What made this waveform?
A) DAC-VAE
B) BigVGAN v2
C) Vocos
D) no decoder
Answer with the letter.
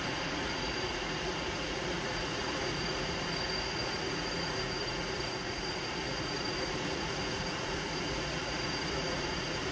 C